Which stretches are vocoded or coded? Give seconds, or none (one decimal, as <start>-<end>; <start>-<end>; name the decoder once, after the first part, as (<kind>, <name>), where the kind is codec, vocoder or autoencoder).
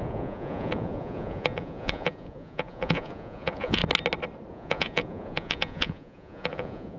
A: 0.0-3.8 (vocoder, Vocos); 4.5-7.0